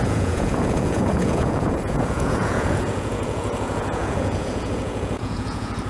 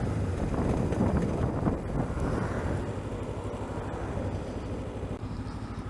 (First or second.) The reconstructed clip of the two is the first